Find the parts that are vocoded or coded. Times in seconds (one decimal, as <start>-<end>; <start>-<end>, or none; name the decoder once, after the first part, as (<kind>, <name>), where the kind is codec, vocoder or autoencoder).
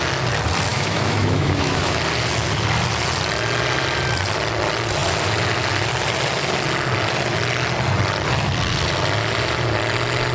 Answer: 0.7-2.0 (autoencoder, DAC-VAE)